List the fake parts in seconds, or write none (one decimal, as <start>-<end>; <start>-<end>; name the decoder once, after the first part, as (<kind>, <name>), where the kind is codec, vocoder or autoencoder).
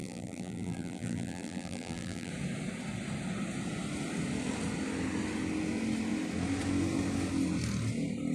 0.0-2.3 (vocoder, BigVGAN v2)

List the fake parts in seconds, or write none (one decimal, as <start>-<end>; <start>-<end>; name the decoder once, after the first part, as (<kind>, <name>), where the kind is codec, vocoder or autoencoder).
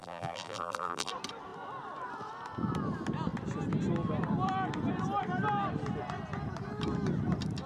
0.0-1.1 (vocoder, BigVGAN v2)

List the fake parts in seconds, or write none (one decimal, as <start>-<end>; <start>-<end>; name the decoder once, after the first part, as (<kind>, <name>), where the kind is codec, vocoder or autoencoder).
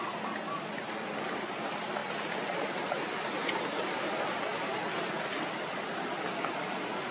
none